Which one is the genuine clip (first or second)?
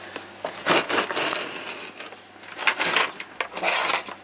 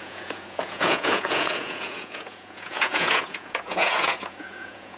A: first